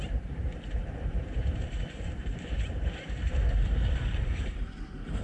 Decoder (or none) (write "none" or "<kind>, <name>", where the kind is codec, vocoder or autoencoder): vocoder, BigVGAN v2